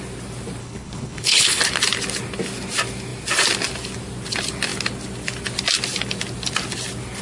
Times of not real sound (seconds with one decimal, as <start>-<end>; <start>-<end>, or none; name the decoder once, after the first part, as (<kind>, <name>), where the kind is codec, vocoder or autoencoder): 0.6-1.6 (codec, HILCodec)